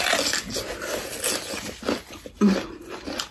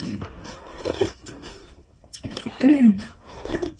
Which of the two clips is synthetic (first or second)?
second